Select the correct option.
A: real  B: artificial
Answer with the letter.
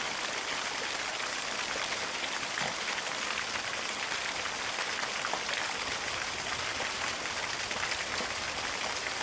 A